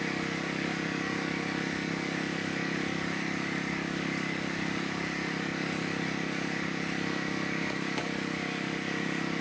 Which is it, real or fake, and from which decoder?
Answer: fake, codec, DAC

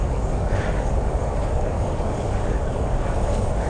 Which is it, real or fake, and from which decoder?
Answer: fake, codec, DAC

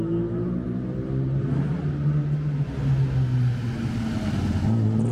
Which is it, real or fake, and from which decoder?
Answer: real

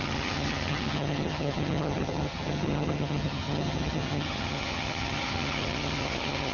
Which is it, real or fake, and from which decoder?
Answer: fake, vocoder, HiFi-GAN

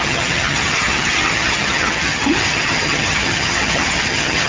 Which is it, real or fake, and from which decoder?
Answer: fake, vocoder, HiFi-GAN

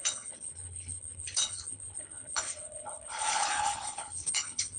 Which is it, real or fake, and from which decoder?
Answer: fake, codec, HILCodec